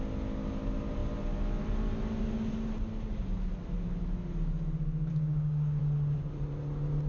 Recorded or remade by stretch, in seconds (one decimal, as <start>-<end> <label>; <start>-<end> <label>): 0.0-5.1 recorded; 5.1-5.8 remade; 5.8-7.1 recorded